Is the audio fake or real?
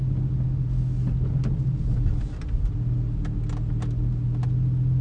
real